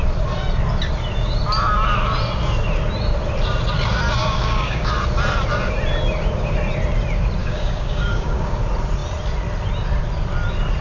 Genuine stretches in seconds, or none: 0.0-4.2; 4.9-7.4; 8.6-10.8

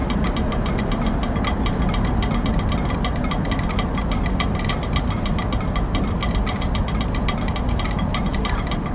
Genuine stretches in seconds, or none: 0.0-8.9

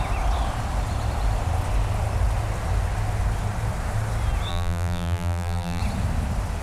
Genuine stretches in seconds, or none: 0.0-4.5; 5.8-6.6

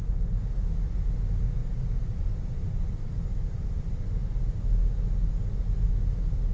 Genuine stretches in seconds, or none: 0.0-6.5

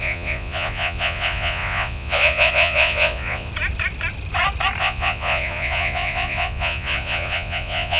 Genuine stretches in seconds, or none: 3.5-4.8

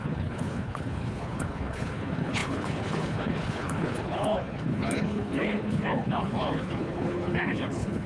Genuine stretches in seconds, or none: none

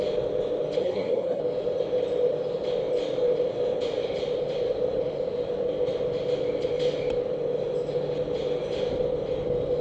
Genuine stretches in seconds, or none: 0.0-0.8; 1.4-9.8